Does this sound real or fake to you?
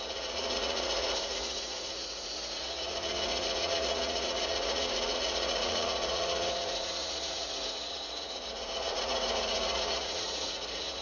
fake